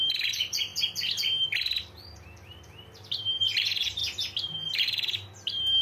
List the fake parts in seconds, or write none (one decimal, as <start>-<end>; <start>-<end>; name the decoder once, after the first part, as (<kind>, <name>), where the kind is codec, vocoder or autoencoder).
0.0-0.7 (vocoder, BigVGAN v2); 2.1-4.0; 4.7-5.8